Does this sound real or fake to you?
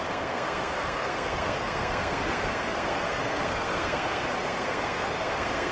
fake